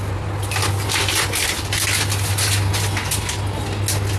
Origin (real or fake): real